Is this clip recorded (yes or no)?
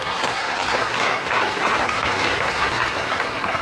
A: no